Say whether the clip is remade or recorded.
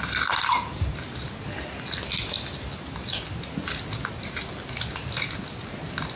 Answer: recorded